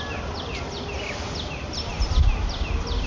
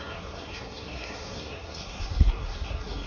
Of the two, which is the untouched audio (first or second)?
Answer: first